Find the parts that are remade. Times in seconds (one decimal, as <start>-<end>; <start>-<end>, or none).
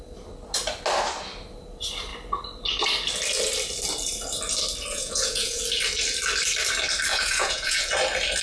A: 4.9-5.6; 7.1-7.9